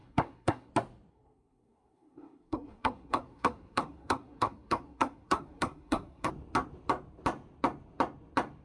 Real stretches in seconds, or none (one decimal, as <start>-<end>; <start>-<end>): 0.7-1.1; 6.3-8.6